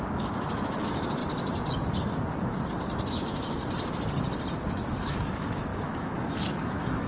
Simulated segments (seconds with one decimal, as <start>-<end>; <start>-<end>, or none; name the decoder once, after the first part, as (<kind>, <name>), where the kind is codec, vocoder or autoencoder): 0.0-1.2 (autoencoder, DAC-VAE); 3.1-3.6; 4.7-7.1